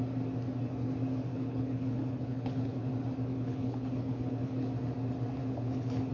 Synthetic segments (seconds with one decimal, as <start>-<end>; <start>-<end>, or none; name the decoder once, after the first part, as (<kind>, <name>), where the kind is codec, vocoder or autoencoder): 1.3-2.9 (codec, HILCodec); 3.3-4.7; 5.4-6.1